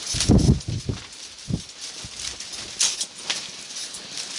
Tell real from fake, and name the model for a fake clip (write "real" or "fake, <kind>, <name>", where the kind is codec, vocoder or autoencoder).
real